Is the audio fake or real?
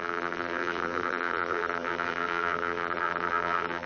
fake